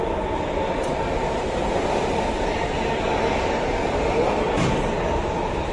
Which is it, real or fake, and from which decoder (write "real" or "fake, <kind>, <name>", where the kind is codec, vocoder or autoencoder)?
real